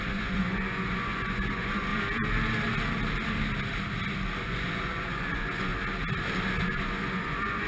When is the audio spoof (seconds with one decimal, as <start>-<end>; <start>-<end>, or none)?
0.0-1.9; 4.4-5.7; 6.6-7.7